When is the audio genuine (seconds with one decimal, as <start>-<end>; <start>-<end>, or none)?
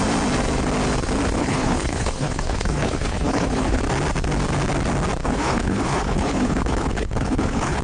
0.0-1.4; 3.8-5.2